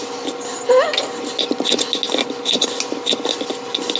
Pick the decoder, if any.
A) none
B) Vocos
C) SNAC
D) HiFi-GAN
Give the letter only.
A